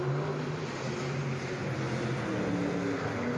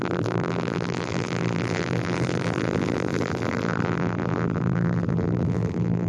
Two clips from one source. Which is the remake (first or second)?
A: second